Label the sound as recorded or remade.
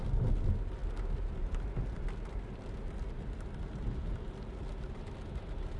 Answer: recorded